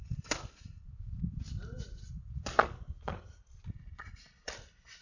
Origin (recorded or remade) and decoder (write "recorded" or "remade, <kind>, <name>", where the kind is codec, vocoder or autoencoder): recorded